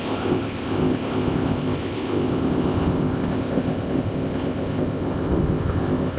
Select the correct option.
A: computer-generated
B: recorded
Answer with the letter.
A